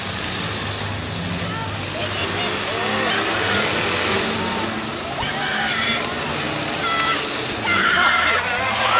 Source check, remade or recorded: recorded